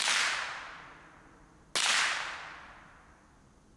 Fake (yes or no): no